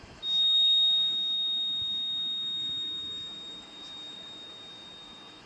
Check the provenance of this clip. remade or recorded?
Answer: remade